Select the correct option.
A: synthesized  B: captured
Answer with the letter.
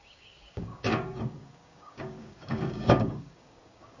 A